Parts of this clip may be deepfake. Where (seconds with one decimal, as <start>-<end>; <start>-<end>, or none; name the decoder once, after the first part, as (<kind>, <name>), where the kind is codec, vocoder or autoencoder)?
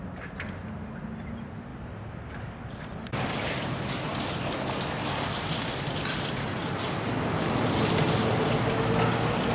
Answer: none